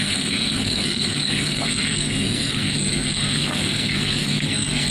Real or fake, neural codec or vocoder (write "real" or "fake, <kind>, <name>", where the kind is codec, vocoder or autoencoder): fake, codec, SNAC